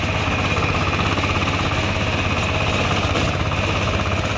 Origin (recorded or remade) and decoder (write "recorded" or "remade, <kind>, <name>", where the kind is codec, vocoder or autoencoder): recorded